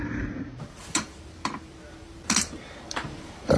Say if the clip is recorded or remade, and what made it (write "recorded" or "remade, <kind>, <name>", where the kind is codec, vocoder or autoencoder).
remade, vocoder, BigVGAN v2